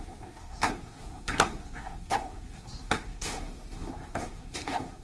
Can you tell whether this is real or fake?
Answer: fake